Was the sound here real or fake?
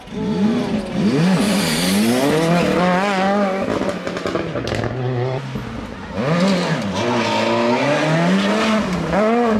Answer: real